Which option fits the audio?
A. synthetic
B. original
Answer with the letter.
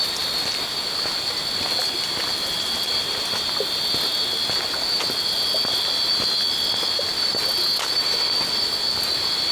B